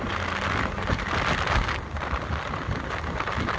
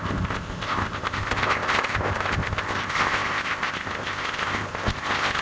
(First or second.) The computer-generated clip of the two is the second